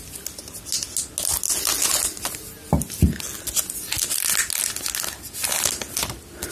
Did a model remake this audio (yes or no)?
no